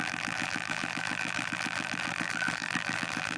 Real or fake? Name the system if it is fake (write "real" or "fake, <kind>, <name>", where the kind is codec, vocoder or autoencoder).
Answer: fake, vocoder, BigVGAN v2